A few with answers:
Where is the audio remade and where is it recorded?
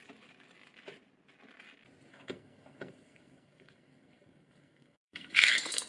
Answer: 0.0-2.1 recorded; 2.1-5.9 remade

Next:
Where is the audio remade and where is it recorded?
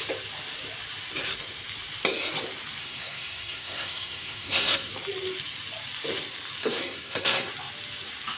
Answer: 0.0-2.8 recorded; 2.8-4.9 remade; 4.9-6.6 recorded; 6.6-7.5 remade; 7.5-8.4 recorded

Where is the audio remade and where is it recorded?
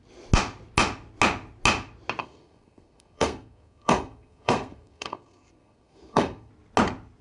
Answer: 0.0-2.2 recorded; 2.2-6.5 remade; 6.5-7.2 recorded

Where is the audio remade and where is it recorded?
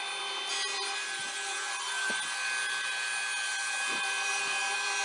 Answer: 0.0-3.5 recorded; 3.5-5.0 remade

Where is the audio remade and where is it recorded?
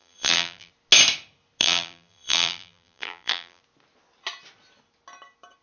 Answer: 0.0-0.7 remade; 0.7-1.6 recorded; 1.6-3.6 remade; 3.6-5.6 recorded